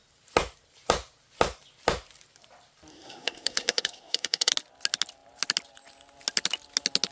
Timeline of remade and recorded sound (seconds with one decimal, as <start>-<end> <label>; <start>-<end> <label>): 0.0-2.9 recorded; 2.9-4.5 remade; 4.5-7.1 recorded